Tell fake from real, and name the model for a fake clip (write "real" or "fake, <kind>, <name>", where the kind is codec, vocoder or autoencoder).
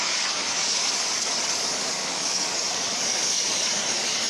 fake, codec, DAC